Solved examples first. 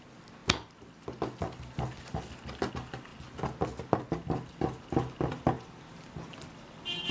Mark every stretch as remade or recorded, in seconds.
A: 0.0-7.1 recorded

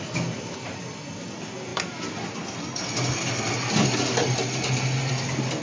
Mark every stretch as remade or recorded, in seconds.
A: 0.0-5.6 recorded

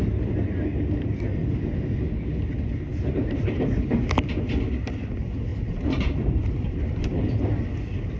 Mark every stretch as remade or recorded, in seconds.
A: 0.0-2.9 recorded; 2.9-3.9 remade; 3.9-5.5 recorded; 5.5-7.4 remade; 7.4-8.2 recorded